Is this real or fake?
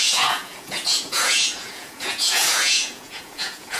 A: fake